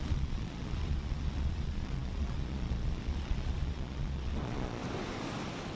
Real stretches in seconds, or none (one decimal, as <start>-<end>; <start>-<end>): 4.8-5.8